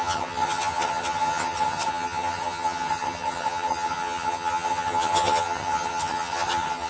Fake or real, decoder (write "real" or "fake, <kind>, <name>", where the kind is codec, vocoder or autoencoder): fake, vocoder, HiFi-GAN